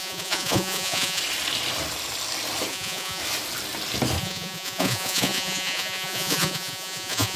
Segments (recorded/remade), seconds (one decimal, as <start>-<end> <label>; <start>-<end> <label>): 0.0-1.2 remade; 1.2-2.7 recorded; 2.7-3.2 remade; 3.2-4.2 recorded; 4.2-7.4 remade